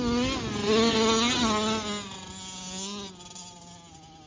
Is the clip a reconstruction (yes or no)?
no